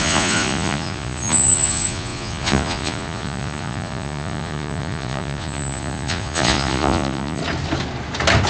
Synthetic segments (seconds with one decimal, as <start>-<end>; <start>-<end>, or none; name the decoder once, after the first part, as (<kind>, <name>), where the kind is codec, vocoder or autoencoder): 0.0-7.4 (vocoder, Vocos)

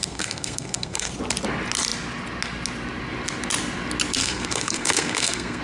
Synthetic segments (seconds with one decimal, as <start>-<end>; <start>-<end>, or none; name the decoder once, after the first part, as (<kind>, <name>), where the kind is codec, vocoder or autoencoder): 0.0-1.1 (codec, SNAC); 4.1-5.6

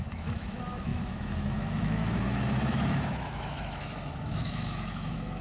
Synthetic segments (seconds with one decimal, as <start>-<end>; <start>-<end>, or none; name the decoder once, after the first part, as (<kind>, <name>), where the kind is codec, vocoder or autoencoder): 0.0-5.4 (autoencoder, DAC-VAE)

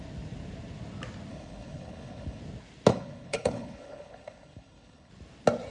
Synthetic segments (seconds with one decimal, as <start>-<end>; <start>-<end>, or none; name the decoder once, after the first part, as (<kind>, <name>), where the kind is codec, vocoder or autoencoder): 1.3-2.4 (codec, HILCodec); 2.9-5.1

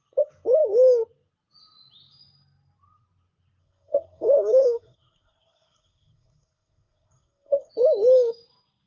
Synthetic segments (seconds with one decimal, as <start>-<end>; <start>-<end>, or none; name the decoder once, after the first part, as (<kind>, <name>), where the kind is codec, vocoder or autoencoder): 3.6-7.7 (codec, SNAC)

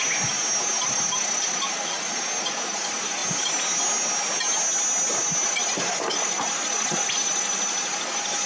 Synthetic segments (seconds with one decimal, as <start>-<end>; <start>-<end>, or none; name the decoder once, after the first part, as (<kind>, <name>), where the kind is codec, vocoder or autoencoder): none

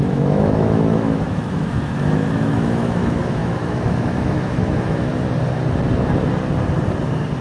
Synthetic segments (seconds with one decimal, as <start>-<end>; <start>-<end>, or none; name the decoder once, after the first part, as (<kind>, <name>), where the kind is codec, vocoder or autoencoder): 0.0-5.1 (autoencoder, DAC-VAE)

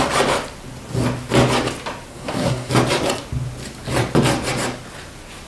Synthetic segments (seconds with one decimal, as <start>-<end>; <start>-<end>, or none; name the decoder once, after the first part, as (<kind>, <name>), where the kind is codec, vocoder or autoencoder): 2.1-2.7 (codec, SNAC)